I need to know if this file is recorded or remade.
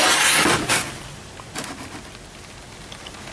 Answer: recorded